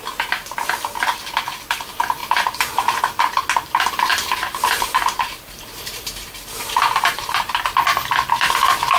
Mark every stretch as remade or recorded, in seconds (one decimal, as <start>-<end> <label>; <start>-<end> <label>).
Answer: 0.0-2.2 recorded; 2.2-3.0 remade; 3.0-4.1 recorded; 4.1-7.5 remade; 7.5-9.0 recorded